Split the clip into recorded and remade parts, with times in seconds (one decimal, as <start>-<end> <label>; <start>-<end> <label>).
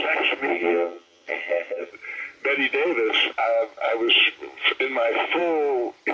0.0-0.5 recorded; 0.5-1.9 remade; 1.9-6.1 recorded